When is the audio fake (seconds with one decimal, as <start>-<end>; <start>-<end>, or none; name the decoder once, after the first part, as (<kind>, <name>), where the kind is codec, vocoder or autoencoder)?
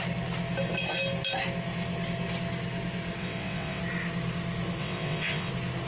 3.2-3.8 (vocoder, WaveNeXt); 4.8-5.5